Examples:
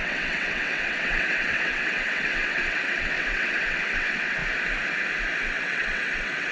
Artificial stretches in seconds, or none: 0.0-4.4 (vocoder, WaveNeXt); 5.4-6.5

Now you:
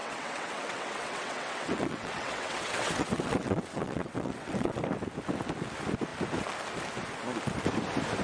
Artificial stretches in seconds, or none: 0.0-4.8 (vocoder, WaveNeXt)

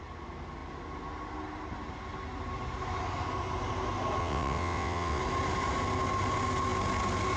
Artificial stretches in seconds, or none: 4.2-5.2 (vocoder, WaveNeXt)

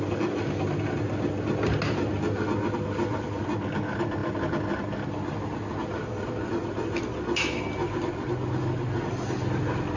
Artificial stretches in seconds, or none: none

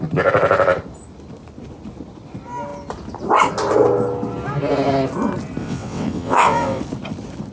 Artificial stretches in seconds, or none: 5.6-6.8 (vocoder, WaveNeXt)

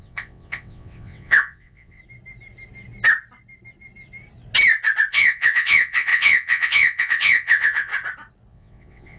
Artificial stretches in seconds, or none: 0.0-2.0 (vocoder, WaveNeXt); 5.1-7.9; 8.5-9.2

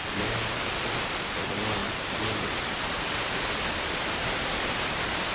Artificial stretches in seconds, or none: none

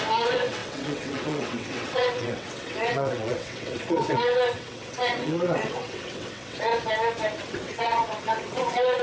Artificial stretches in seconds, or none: 0.0-6.7 (vocoder, WaveNeXt); 7.4-9.0